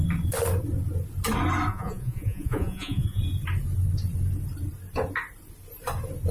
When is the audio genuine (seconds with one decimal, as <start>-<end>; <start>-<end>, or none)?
0.0-1.7; 3.2-6.3

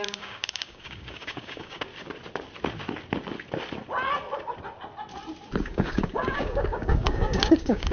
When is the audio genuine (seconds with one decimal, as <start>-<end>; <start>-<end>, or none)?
1.9-5.6